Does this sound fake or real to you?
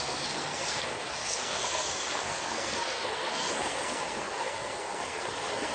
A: fake